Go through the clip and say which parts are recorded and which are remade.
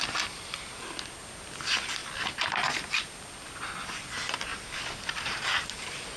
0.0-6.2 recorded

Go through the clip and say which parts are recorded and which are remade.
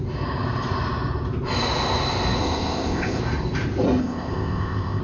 0.0-2.4 recorded; 2.4-3.2 remade; 3.2-4.0 recorded; 4.0-5.0 remade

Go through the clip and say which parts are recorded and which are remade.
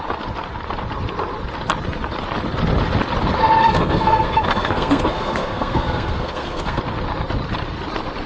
0.0-3.6 recorded; 3.6-6.8 remade; 6.8-8.3 recorded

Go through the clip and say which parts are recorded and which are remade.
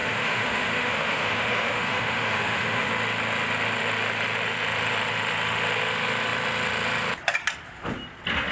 0.0-2.9 remade; 2.9-8.5 recorded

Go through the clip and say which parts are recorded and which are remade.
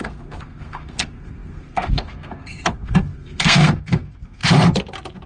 0.0-4.4 remade; 4.4-5.3 recorded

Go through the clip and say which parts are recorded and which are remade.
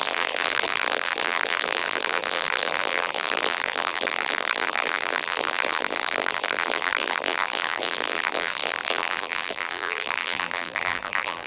0.0-11.5 remade